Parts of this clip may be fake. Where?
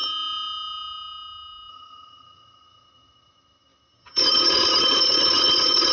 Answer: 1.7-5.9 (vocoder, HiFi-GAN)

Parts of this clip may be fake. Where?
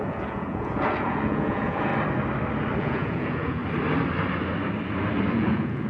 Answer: 0.0-1.9 (vocoder, Vocos); 2.8-3.6; 5.3-5.9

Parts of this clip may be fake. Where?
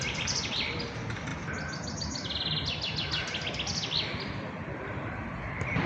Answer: none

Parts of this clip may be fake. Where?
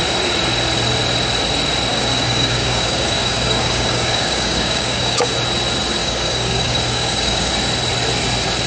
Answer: 1.9-5.3 (codec, DAC); 6.0-7.5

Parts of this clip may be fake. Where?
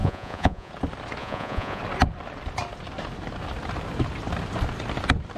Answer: 0.0-0.7 (vocoder, Vocos); 1.2-1.8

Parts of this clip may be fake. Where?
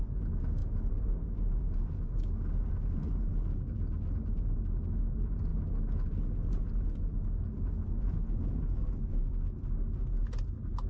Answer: none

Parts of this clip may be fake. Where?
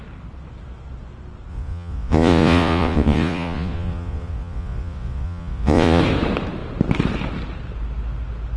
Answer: 1.5-6.0 (vocoder, Vocos)